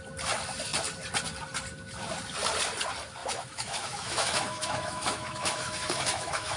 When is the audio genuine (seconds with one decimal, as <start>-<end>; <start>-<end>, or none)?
0.0-3.2